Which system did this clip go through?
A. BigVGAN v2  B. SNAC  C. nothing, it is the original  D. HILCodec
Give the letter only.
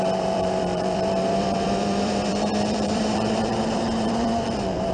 A